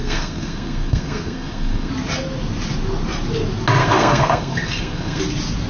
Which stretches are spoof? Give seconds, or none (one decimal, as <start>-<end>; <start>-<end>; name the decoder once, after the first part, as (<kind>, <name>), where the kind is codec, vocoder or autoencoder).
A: 0.0-1.9 (codec, SNAC); 3.8-5.2